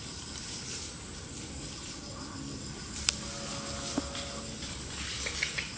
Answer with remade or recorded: recorded